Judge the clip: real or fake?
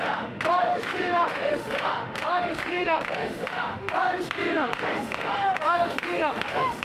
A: fake